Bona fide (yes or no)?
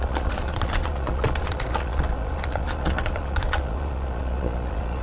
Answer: no